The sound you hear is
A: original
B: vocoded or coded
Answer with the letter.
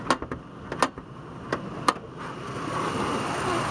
A